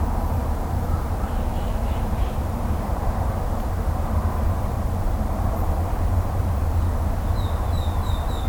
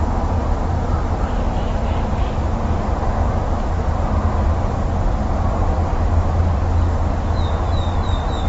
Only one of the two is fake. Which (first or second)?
first